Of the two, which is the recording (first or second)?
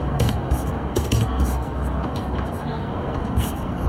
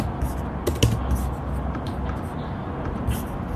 second